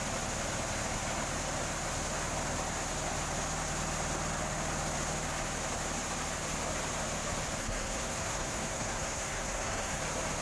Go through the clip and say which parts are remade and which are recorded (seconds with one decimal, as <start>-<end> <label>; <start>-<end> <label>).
0.0-7.6 recorded; 7.6-10.0 remade; 10.0-10.4 recorded